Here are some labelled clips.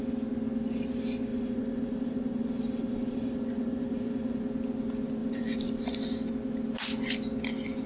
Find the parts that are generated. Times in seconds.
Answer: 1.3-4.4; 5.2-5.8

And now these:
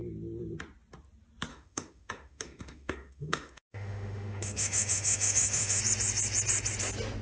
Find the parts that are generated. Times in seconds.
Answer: 1.5-5.8

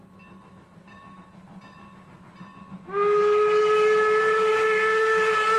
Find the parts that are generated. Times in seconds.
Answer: none